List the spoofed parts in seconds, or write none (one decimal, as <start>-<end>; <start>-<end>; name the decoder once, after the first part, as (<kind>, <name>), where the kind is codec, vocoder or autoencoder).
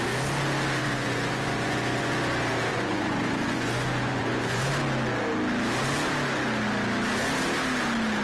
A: 0.8-2.1 (vocoder, Vocos); 2.7-4.6